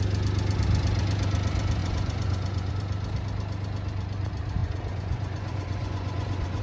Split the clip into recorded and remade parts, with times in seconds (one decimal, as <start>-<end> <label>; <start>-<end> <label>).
0.0-1.8 recorded; 1.8-2.7 remade; 2.7-4.6 recorded; 4.6-6.6 remade